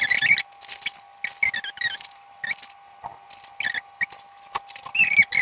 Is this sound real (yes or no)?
yes